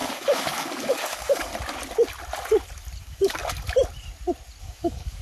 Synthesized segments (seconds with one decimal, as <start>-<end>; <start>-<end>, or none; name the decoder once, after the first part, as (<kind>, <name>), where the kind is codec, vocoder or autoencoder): 0.0-1.5 (codec, DAC); 3.0-3.4; 4.6-5.2